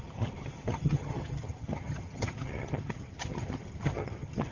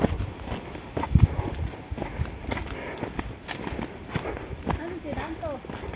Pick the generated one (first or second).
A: first